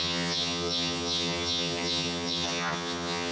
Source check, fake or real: fake